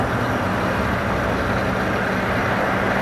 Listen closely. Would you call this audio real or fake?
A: real